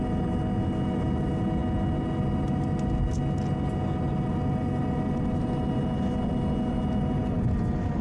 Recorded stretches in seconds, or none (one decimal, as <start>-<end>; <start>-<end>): 0.0-8.0